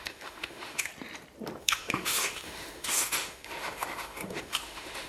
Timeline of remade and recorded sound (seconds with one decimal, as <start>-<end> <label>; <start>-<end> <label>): 0.0-0.9 remade; 0.9-1.6 recorded; 1.6-5.1 remade